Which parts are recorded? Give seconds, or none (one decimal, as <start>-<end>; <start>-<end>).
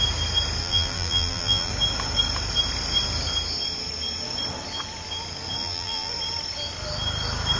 0.0-0.6; 1.7-5.6; 6.1-7.6